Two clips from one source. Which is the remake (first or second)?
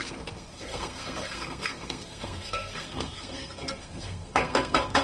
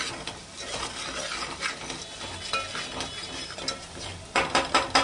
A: first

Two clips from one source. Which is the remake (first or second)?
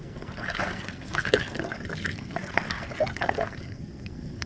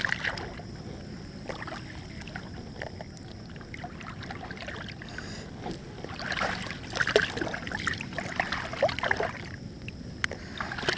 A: first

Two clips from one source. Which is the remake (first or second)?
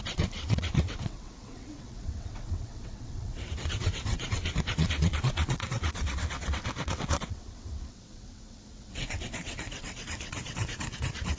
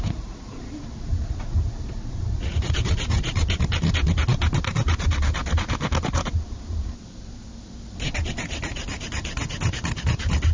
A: first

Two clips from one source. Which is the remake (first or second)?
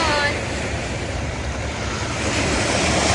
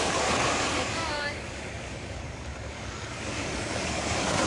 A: second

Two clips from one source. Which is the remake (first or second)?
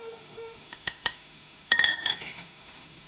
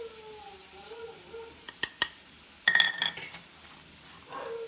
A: first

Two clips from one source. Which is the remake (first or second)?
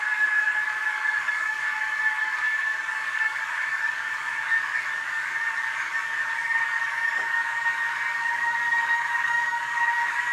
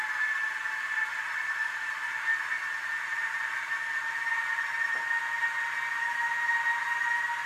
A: first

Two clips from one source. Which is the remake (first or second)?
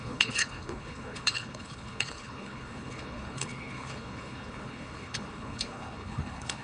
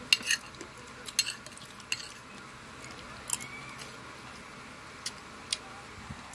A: first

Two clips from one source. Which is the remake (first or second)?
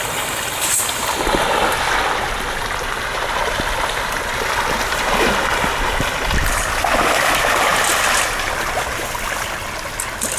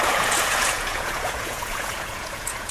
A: second